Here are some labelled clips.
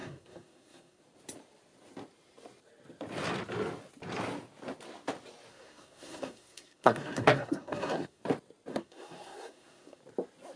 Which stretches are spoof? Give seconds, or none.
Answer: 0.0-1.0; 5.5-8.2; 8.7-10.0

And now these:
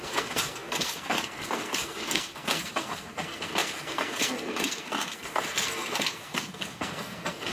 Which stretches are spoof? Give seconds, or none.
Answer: 0.0-7.5

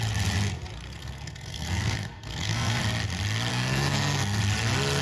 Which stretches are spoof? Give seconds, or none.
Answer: 1.0-2.8; 3.5-4.4

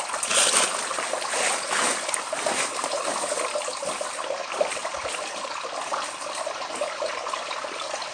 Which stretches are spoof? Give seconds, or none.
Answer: none

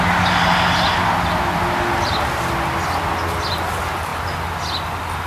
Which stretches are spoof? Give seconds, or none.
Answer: none

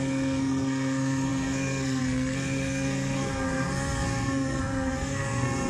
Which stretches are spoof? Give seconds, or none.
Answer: 0.0-5.7

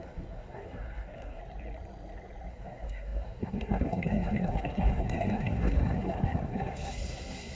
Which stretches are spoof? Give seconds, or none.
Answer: 0.0-1.4; 2.5-7.5